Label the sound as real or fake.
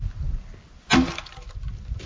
real